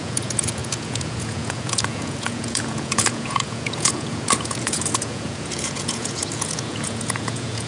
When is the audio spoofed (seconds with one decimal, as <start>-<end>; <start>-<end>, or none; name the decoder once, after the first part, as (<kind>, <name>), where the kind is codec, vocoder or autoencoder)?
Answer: 0.0-7.7 (vocoder, Vocos)